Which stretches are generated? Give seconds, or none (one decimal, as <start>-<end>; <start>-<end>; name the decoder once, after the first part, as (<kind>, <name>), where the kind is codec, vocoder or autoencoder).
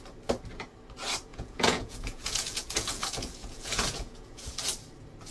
1.3-4.5 (vocoder, Vocos)